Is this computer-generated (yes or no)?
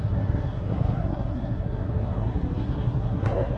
yes